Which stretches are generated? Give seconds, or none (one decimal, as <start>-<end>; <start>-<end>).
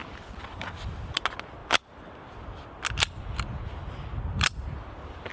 0.0-0.6; 4.3-5.3